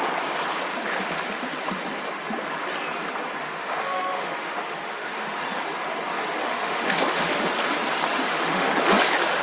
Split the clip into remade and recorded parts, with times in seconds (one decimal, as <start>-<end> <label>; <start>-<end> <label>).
0.0-3.4 recorded; 3.4-5.4 remade; 5.4-6.4 recorded; 6.4-7.5 remade; 7.5-8.1 recorded; 8.1-8.7 remade; 8.7-9.4 recorded